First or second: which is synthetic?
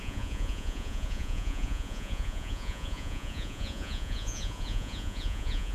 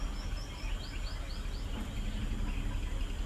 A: first